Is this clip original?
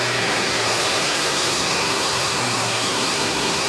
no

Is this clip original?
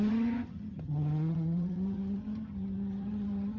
no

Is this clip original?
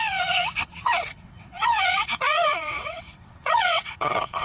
no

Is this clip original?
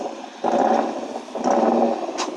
yes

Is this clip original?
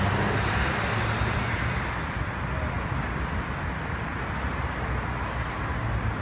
yes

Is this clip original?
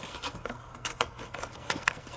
no